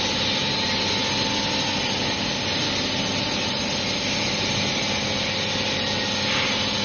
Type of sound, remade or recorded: recorded